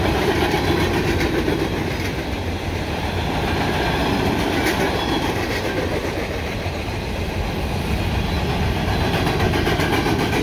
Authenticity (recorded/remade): recorded